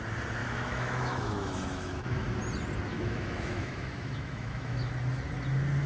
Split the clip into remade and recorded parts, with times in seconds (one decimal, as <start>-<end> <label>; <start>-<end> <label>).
0.0-0.4 recorded; 0.4-2.3 remade; 2.3-2.9 recorded; 2.9-4.9 remade; 4.9-5.9 recorded